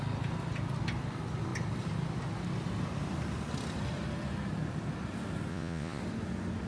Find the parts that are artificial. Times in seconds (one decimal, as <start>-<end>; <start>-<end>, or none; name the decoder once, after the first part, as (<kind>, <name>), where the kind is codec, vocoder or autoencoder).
5.5-6.0 (vocoder, Vocos)